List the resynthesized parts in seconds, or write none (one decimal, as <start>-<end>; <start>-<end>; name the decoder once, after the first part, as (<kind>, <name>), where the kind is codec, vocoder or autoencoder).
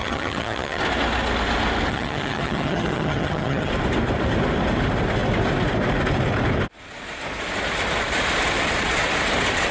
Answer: 0.0-0.8 (vocoder, HiFi-GAN); 1.9-3.7